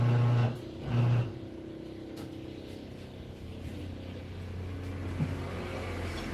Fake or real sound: real